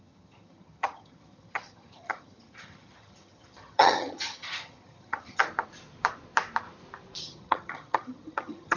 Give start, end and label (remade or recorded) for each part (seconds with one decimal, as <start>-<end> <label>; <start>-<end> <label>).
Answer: 0.0-5.4 remade; 5.4-7.2 recorded; 7.2-8.8 remade